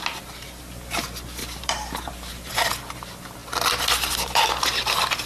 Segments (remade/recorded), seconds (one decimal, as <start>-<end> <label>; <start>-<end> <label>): 0.0-1.4 recorded; 1.4-2.5 remade; 2.5-5.3 recorded